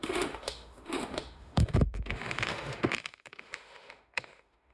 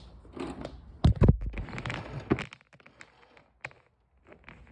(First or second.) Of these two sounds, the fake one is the first